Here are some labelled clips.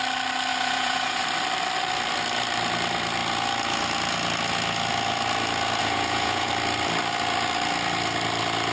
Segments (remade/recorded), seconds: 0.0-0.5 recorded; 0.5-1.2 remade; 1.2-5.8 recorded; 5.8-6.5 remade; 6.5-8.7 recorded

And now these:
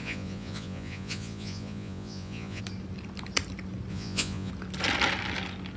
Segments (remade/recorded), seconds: 0.0-2.6 remade; 2.6-3.9 recorded; 3.9-4.5 remade; 4.5-5.8 recorded